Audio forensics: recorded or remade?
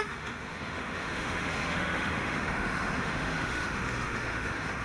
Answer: remade